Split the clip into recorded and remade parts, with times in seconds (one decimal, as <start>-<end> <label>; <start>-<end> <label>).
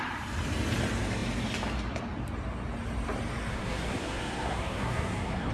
0.0-3.5 recorded; 3.5-5.5 remade